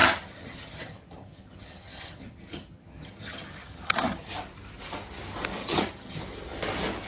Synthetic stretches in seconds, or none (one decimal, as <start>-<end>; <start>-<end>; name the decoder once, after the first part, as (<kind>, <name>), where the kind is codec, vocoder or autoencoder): 0.0-4.3 (vocoder, HiFi-GAN); 5.6-6.2